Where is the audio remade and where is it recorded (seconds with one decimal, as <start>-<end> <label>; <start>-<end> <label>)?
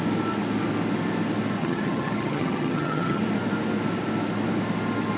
0.0-1.6 recorded; 1.6-3.2 remade; 3.2-5.2 recorded